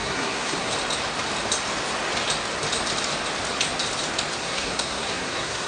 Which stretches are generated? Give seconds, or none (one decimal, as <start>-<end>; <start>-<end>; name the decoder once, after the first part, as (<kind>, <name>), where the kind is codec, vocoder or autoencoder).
0.0-0.7 (codec, SNAC); 4.4-5.7

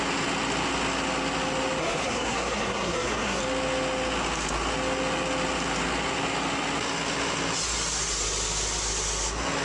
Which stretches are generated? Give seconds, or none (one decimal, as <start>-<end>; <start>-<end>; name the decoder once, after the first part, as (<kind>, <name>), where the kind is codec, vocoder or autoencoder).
1.8-3.4 (codec, SNAC)

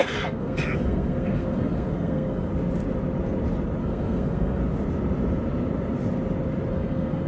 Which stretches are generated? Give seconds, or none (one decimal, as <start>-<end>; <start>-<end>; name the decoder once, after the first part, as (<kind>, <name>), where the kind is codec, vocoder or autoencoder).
0.0-2.5 (codec, SNAC); 3.8-4.6; 6.7-7.3

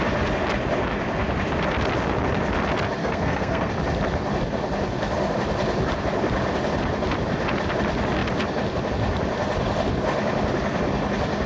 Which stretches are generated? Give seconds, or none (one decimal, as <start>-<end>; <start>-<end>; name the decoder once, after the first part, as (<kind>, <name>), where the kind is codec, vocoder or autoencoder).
3.0-3.7 (codec, SNAC)